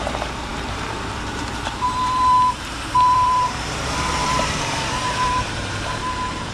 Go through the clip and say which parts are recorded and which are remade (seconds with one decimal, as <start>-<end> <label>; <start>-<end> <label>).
0.0-6.5 remade